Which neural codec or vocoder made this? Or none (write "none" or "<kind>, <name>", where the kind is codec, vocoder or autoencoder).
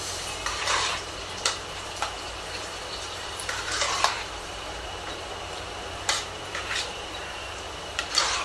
vocoder, BigVGAN v2